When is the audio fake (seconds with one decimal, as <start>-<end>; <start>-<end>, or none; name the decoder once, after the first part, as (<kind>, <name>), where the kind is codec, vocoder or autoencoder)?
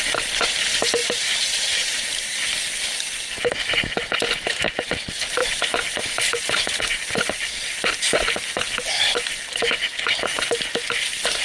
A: 1.0-2.7 (vocoder, BigVGAN v2); 5.4-9.5